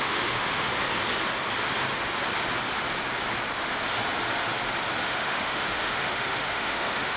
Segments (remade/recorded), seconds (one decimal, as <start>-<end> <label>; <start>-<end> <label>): 0.0-0.7 remade; 0.7-5.0 recorded; 5.0-7.2 remade